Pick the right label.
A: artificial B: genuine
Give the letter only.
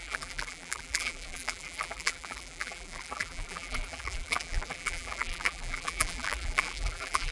A